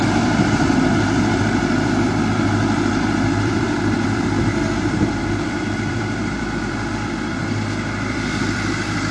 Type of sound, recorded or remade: remade